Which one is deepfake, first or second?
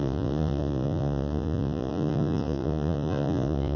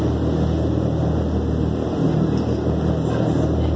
first